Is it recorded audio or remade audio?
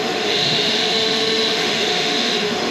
remade